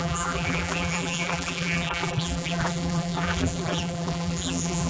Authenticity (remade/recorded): remade